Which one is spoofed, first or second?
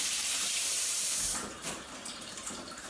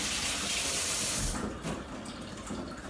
first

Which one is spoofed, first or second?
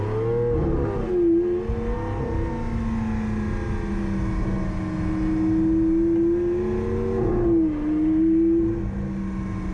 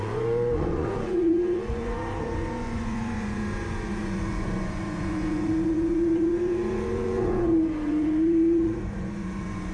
second